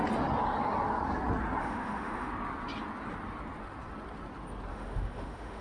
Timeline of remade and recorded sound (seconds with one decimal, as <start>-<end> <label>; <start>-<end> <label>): 0.0-1.6 recorded; 1.6-2.3 remade; 2.3-4.7 recorded; 4.7-5.6 remade